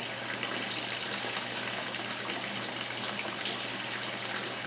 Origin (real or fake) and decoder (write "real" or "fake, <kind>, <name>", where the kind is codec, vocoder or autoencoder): real